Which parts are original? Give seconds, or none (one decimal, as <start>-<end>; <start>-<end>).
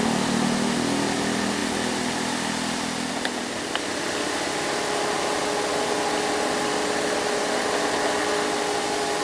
0.0-9.2